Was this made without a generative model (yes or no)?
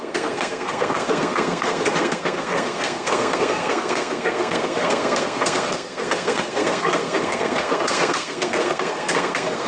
no